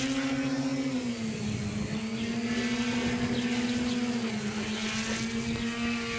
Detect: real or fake real